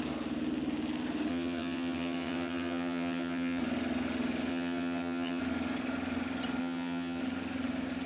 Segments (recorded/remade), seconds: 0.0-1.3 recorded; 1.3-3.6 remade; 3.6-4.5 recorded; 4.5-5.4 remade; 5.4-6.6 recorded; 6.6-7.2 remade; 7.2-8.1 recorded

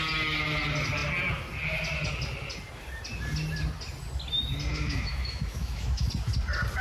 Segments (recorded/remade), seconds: 0.0-4.7 recorded; 4.7-6.1 remade; 6.1-6.8 recorded

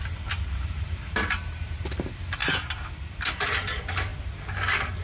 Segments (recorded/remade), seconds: 0.0-2.4 remade; 2.4-3.3 recorded; 3.3-4.1 remade; 4.1-5.0 recorded

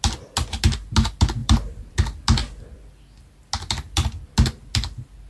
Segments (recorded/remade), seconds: 0.0-1.4 recorded; 1.4-1.9 remade; 1.9-5.3 recorded